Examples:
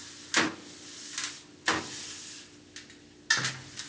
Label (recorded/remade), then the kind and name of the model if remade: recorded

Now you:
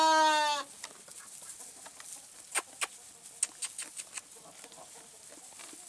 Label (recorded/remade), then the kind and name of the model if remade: recorded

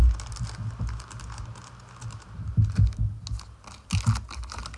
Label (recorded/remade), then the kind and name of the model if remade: recorded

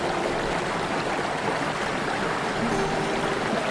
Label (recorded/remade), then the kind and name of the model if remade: recorded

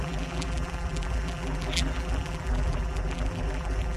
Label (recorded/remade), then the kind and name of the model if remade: remade, vocoder, BigVGAN v2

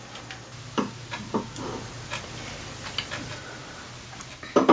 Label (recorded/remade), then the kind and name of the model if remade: recorded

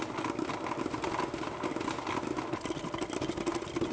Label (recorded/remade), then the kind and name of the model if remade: recorded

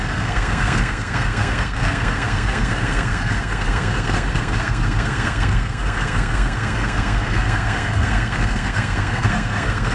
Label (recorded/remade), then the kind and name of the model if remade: remade, codec, SNAC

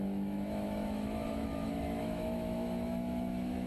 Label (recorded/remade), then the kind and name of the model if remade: remade, autoencoder, DAC-VAE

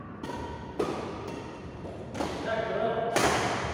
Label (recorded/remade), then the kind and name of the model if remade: recorded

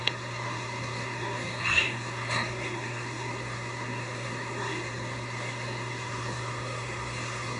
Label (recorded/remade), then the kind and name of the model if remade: remade, codec, SNAC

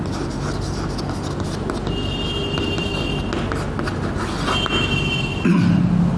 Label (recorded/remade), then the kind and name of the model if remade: recorded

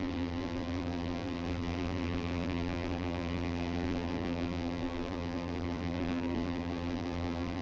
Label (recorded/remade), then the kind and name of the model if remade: remade, vocoder, BigVGAN v2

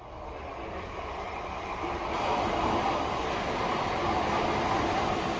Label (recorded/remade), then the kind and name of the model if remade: recorded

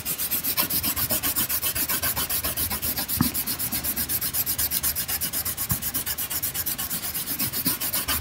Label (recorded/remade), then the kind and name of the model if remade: recorded